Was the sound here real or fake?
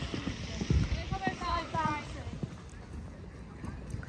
real